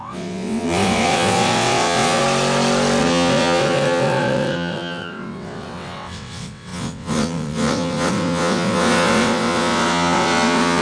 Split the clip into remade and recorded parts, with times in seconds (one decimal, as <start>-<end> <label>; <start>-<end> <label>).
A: 0.0-2.2 remade; 2.2-3.0 recorded; 3.0-10.8 remade